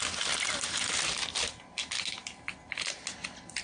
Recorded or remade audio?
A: recorded